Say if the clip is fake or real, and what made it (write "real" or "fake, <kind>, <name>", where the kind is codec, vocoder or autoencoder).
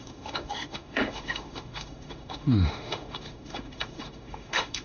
fake, autoencoder, DAC-VAE